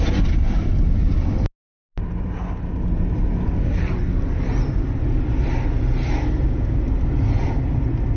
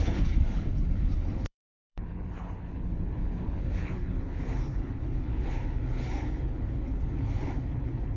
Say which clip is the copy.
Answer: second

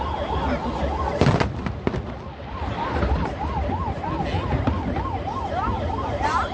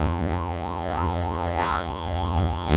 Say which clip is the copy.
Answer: second